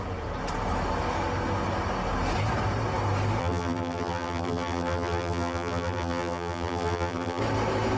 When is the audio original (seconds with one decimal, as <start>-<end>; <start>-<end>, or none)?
0.0-3.4; 7.4-8.0

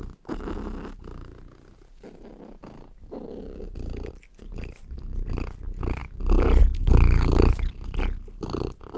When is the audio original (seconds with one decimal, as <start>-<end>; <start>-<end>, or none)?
0.0-9.0